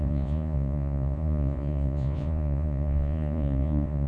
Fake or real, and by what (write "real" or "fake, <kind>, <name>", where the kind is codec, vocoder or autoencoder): fake, vocoder, Vocos